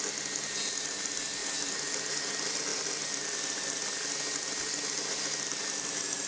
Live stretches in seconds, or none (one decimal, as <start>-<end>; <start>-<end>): 0.0-6.3